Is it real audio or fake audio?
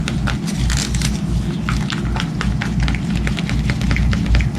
real